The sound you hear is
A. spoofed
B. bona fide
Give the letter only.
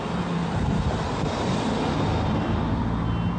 B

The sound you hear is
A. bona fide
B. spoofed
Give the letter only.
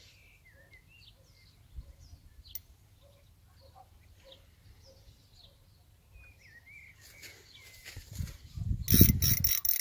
A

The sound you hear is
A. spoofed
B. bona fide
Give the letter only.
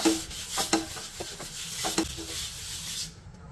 B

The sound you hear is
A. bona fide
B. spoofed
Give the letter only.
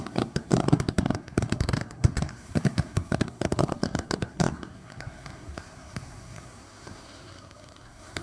B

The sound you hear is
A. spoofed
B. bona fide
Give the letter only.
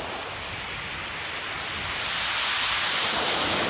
B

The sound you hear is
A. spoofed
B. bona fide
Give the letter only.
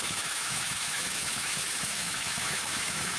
A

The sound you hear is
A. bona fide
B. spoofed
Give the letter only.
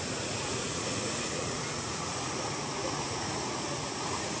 B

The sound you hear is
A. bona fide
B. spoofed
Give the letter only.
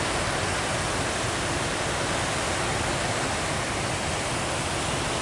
A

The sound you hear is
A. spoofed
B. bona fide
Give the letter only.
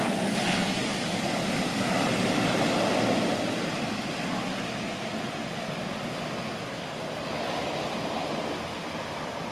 B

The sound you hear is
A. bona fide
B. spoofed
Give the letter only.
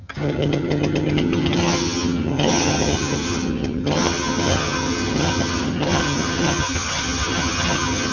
B